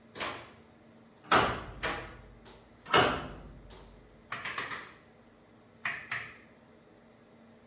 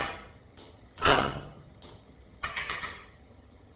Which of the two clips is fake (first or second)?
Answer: second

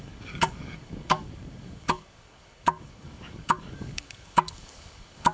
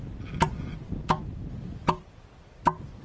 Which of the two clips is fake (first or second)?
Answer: first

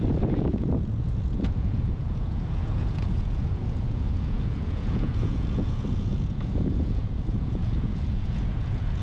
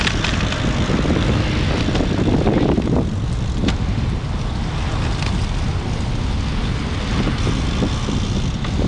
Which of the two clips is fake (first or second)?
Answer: first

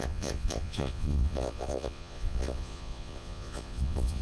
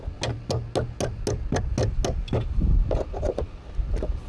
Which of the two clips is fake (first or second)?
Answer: first